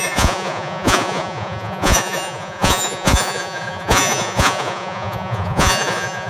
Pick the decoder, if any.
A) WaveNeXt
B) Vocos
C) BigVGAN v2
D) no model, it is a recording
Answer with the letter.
B